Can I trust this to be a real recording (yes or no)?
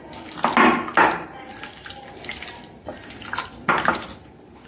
yes